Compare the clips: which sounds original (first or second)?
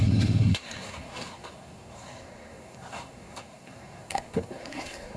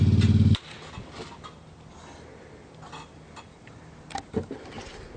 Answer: second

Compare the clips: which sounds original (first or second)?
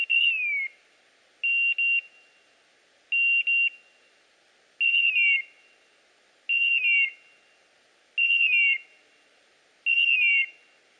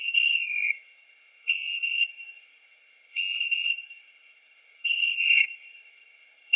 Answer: first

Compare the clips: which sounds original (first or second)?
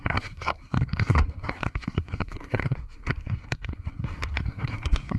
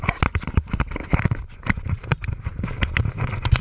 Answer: second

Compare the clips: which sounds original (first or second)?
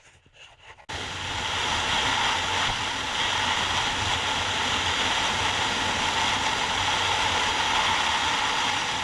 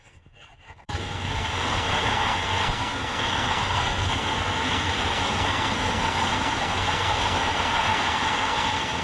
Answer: first